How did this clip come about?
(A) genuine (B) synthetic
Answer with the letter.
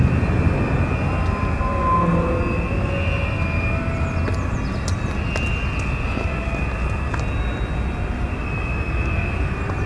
A